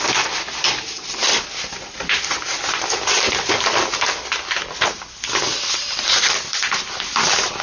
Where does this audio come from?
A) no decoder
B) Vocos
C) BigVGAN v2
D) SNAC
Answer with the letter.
A